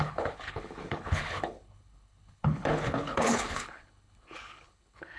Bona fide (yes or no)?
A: no